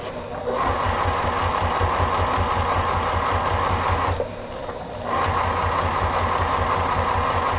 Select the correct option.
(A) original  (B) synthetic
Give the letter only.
A